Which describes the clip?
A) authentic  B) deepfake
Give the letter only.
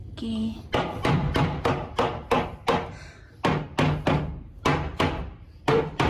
A